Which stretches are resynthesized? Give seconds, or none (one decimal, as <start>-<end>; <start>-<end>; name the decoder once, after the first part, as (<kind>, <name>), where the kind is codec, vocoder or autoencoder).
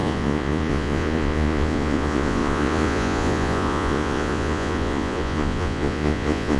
0.0-6.6 (vocoder, Vocos)